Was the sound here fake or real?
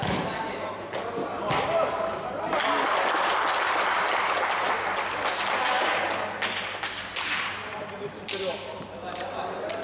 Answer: real